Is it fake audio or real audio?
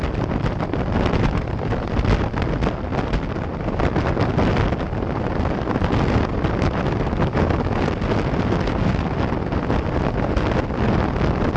real